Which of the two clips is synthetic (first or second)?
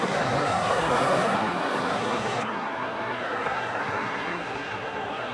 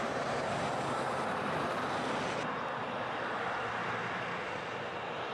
first